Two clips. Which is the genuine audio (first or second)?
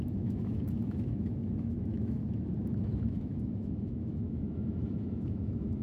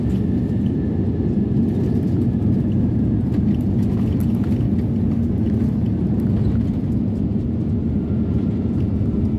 second